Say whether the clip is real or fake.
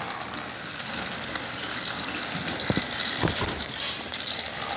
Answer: real